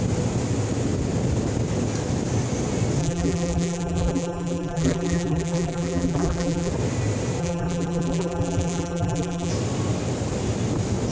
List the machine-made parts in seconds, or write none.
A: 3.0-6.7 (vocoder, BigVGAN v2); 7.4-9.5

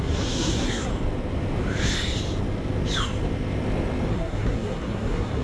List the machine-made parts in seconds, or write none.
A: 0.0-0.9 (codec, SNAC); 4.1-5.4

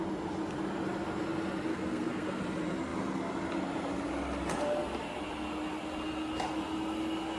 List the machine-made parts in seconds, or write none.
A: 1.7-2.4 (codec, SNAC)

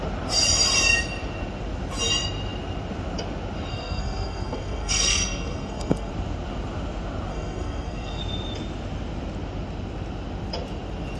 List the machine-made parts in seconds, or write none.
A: 3.7-6.1 (codec, SNAC); 7.3-8.2

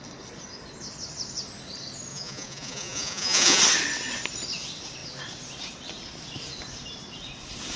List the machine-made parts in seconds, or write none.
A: 2.1-3.6 (vocoder, Vocos)

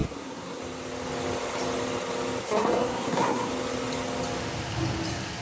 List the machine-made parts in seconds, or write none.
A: 0.0-0.6 (codec, SNAC); 2.4-3.5

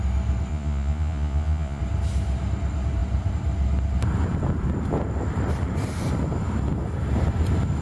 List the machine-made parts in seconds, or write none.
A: 0.5-1.8 (vocoder, Vocos)

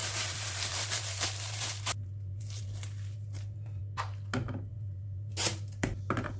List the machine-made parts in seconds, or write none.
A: 0.0-3.8 (vocoder, BigVGAN v2); 4.7-6.4